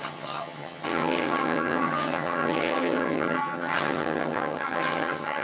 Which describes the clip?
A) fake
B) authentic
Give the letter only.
A